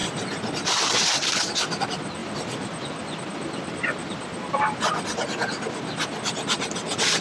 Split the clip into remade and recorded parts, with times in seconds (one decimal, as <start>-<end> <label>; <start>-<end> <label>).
0.0-2.2 recorded; 2.2-4.9 remade; 4.9-7.2 recorded